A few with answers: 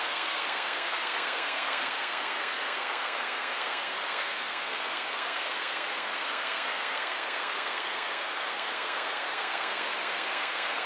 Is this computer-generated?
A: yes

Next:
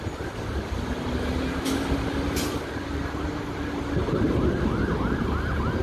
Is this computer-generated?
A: no